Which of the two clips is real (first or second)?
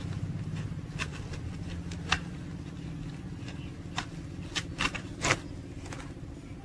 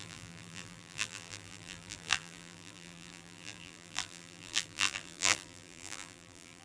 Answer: first